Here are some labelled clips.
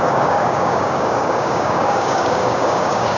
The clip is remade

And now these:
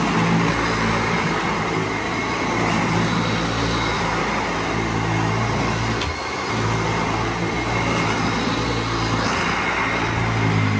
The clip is recorded